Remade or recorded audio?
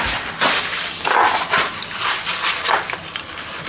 recorded